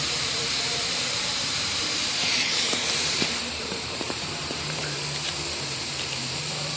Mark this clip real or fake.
fake